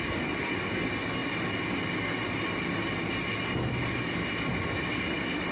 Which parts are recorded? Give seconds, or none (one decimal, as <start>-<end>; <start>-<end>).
0.0-5.5

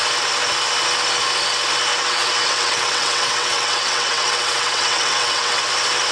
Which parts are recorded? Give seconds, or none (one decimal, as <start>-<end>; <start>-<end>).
0.0-1.9; 5.6-6.1